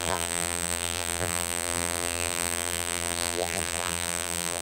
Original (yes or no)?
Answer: no